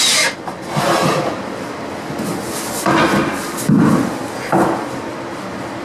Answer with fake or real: real